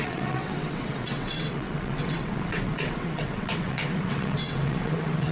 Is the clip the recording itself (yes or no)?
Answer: no